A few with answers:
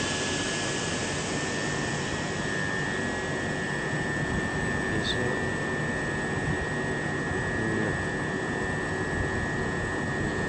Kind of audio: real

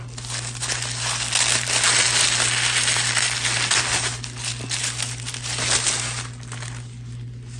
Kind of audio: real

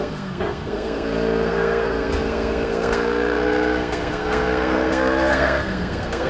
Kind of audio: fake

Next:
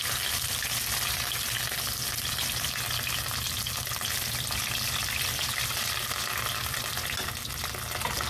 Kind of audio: real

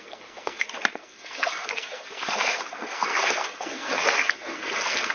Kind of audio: fake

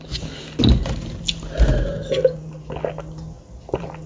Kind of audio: real